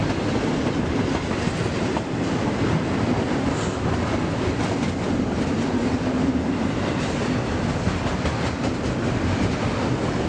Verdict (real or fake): real